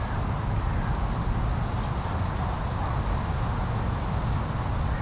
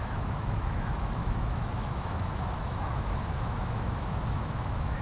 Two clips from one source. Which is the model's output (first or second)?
second